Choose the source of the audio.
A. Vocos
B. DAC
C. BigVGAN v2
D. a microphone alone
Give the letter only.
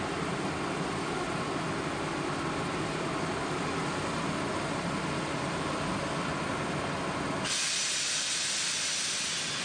D